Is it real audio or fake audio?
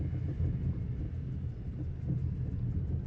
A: real